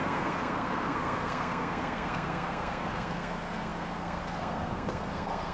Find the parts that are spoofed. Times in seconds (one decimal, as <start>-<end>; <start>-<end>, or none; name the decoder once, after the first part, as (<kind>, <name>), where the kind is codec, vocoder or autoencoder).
0.0-5.5 (codec, SNAC)